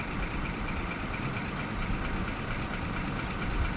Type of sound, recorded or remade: recorded